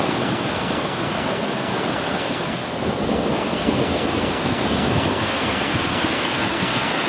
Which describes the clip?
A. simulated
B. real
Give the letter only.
A